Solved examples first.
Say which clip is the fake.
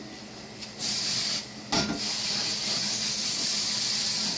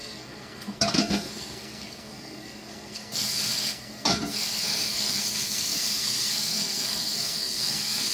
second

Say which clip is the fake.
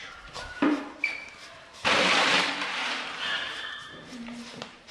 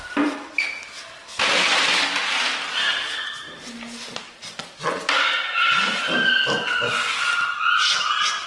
first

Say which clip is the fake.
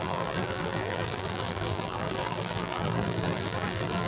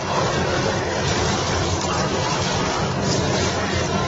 first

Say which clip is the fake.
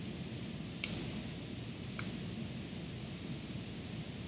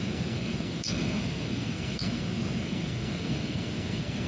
second